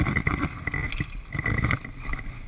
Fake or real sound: real